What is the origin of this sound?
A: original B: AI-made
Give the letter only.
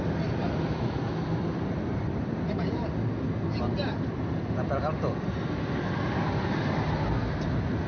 A